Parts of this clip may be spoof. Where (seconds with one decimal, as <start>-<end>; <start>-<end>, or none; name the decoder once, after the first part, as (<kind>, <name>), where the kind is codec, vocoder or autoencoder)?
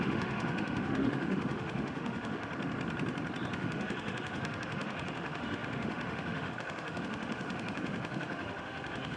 0.0-2.5 (autoencoder, DAC-VAE); 3.5-9.2